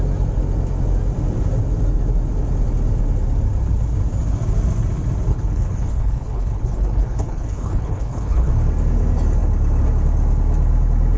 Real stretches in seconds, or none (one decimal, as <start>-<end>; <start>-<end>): 0.0-5.3; 8.5-11.2